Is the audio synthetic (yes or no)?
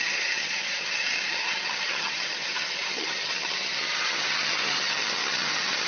yes